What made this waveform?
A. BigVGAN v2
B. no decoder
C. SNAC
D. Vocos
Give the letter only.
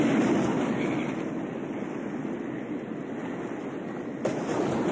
B